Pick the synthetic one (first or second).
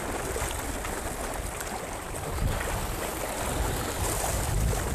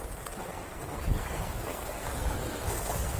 second